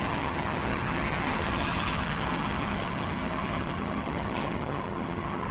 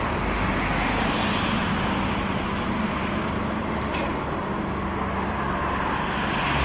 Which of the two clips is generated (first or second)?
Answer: first